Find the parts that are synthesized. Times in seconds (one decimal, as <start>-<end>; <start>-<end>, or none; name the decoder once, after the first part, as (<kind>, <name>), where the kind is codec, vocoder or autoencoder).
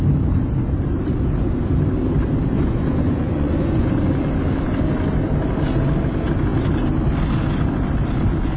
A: 2.5-3.9 (vocoder, Vocos)